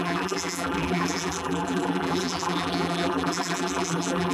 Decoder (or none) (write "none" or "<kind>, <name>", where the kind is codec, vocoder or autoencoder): vocoder, BigVGAN v2